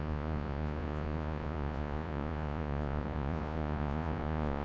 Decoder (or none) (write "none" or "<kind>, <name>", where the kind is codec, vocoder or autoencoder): vocoder, Vocos